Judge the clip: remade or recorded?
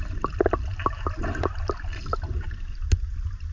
recorded